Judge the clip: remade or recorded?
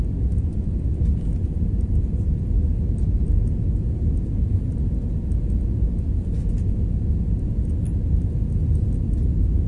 recorded